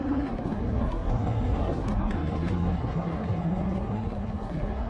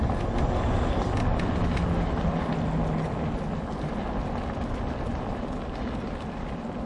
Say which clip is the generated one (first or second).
first